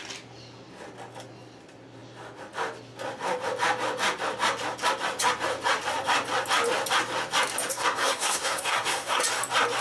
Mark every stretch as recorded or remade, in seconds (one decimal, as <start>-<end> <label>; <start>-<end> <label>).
0.0-7.7 recorded; 7.7-9.2 remade; 9.2-9.8 recorded